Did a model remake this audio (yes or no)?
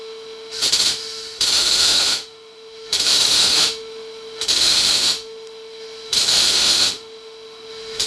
yes